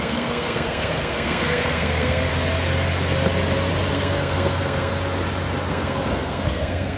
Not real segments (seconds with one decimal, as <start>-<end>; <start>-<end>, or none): 0.0-2.3; 3.9-4.9; 5.7-7.0

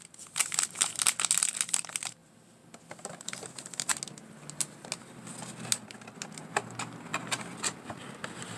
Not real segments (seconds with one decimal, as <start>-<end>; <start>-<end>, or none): none